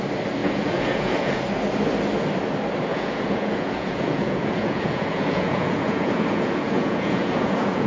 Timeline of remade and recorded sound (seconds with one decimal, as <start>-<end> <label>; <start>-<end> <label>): 0.0-0.4 recorded; 0.4-1.4 remade; 1.4-2.9 recorded; 2.9-7.9 remade